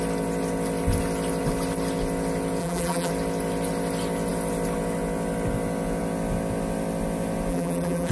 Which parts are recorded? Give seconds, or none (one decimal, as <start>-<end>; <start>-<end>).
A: 0.0-2.6; 3.1-7.5